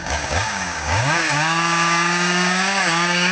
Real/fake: fake